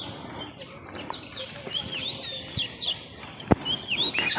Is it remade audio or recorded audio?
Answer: recorded